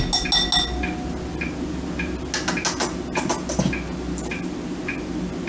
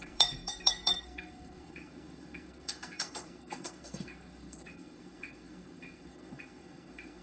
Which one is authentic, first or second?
first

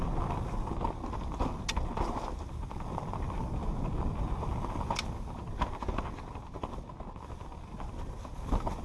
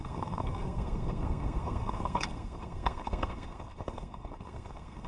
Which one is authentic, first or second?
first